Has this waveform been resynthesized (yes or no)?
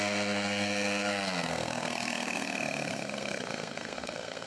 yes